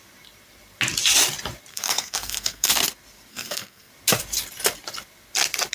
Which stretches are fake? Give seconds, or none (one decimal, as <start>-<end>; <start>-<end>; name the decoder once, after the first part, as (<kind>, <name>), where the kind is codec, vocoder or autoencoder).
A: 1.7-2.7 (codec, SNAC); 3.3-3.9